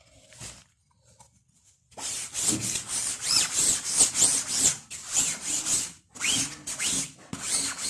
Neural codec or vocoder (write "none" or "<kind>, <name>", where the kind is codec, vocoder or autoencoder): none